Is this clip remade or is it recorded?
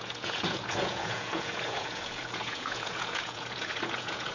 remade